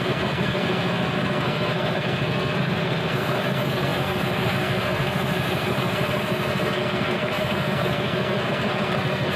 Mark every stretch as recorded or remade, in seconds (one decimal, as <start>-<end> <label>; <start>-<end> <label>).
0.0-9.4 remade